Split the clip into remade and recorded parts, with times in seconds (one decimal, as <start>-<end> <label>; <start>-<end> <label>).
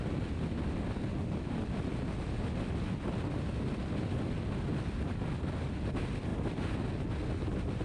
0.0-7.8 recorded